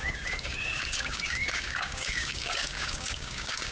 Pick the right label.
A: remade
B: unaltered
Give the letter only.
A